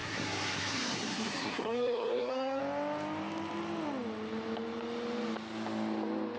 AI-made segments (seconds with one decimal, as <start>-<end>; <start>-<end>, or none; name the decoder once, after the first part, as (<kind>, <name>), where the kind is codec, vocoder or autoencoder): 0.0-2.6 (codec, SNAC)